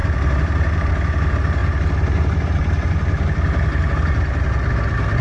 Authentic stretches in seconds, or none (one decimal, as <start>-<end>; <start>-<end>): 0.9-1.6; 4.7-5.2